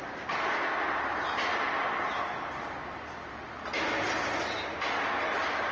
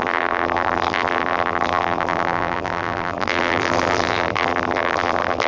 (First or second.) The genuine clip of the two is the first